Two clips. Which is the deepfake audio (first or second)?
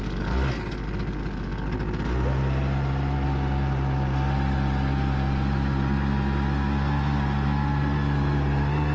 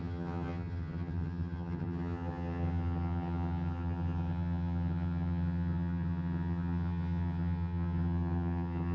second